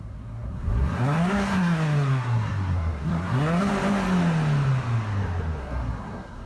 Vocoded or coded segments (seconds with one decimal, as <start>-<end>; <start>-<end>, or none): 0.0-3.7; 5.6-6.5